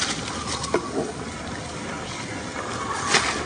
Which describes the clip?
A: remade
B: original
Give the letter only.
B